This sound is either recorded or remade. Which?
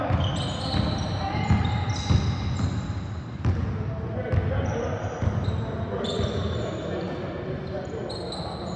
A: recorded